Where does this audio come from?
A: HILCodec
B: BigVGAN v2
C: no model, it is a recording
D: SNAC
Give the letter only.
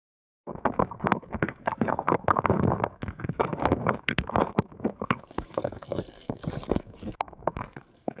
D